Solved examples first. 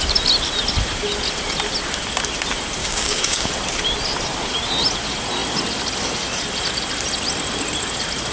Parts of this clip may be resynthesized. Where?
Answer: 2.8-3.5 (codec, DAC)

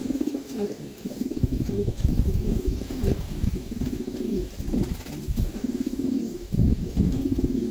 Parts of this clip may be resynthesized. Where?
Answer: 0.0-4.5 (codec, DAC); 5.2-7.7

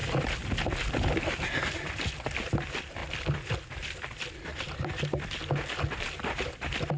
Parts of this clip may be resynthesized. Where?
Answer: 3.0-3.5 (vocoder, BigVGAN v2); 4.5-5.0

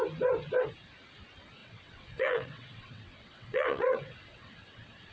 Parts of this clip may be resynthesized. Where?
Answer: 1.6-5.1 (vocoder, WaveNeXt)

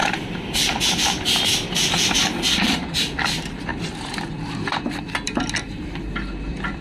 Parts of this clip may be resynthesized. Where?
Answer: 0.0-6.8 (vocoder, BigVGAN v2)

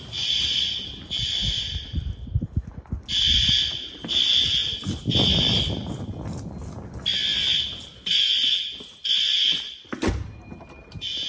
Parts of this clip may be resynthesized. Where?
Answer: none

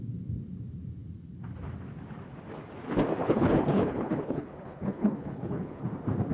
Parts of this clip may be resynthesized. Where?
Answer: 3.2-5.8 (codec, HILCodec)

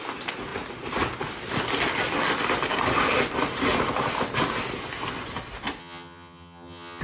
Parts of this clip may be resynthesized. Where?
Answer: 5.8-7.0 (vocoder, HiFi-GAN)